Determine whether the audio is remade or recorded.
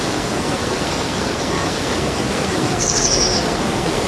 remade